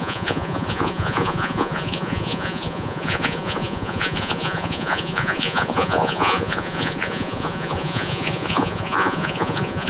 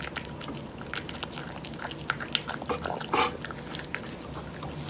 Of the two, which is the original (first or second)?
second